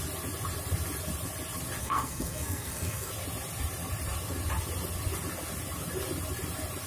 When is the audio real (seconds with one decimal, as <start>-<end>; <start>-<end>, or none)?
0.0-1.8; 3.1-6.9